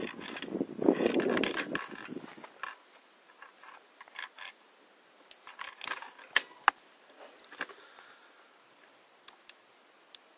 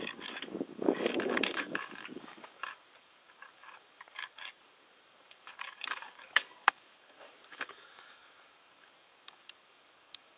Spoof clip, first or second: second